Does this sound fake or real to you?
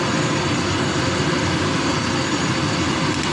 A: real